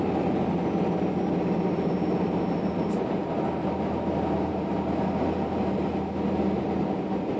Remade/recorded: recorded